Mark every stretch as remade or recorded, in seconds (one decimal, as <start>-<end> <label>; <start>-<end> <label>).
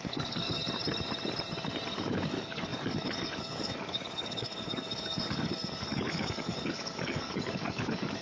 0.0-0.6 remade; 0.6-1.9 recorded; 1.9-8.2 remade